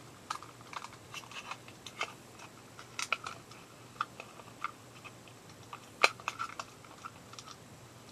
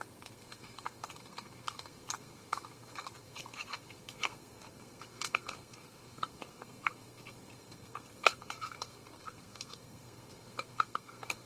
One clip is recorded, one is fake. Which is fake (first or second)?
second